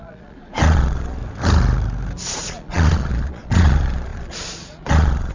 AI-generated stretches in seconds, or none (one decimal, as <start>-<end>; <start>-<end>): 0.0-1.2; 2.3-5.3